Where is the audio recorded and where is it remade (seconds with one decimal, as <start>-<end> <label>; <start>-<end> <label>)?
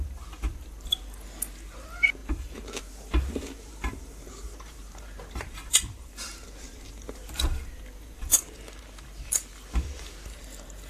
0.0-10.9 remade